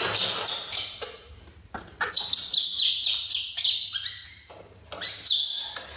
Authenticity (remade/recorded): recorded